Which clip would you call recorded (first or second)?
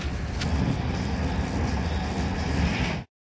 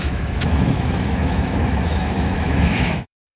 first